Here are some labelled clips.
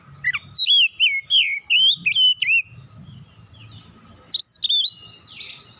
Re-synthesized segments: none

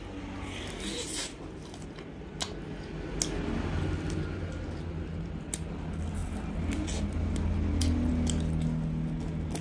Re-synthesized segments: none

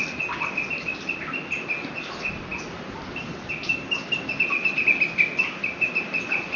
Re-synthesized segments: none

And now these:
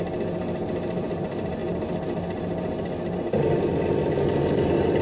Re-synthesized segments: none